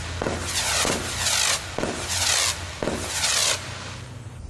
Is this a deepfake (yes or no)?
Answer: no